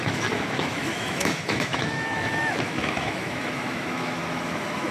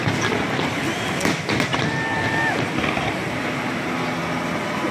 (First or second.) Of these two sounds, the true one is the second